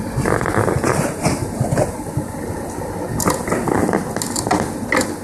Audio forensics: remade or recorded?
recorded